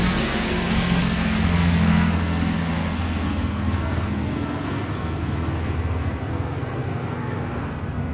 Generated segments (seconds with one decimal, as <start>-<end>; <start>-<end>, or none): 0.0-8.1